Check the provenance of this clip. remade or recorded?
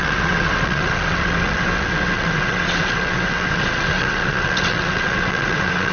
remade